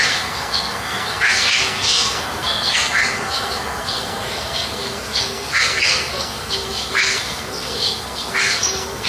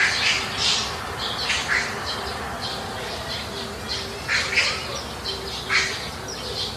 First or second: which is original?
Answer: second